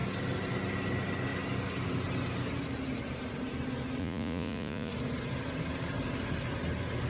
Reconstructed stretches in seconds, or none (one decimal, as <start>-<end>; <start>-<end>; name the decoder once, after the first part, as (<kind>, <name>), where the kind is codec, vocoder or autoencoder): 4.0-4.9 (vocoder, Vocos)